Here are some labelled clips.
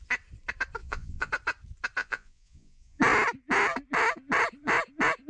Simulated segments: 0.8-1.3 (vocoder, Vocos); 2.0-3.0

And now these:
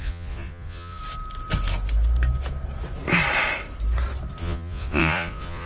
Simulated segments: 0.0-1.0 (vocoder, Vocos); 4.4-5.7

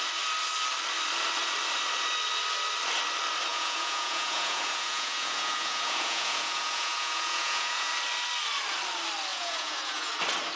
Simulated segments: 3.5-7.9 (vocoder, Vocos); 9.3-10.1

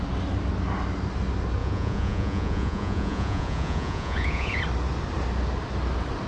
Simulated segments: 1.6-4.6 (vocoder, Vocos)

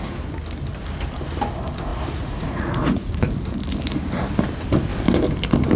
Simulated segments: 1.9-3.2 (vocoder, Vocos)

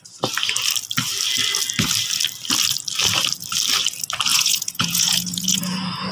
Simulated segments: 4.3-5.6 (vocoder, Vocos)